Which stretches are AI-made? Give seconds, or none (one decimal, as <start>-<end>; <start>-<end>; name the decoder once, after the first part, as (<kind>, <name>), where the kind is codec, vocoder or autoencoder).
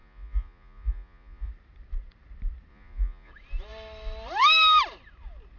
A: 0.0-1.5 (vocoder, Vocos); 2.7-3.3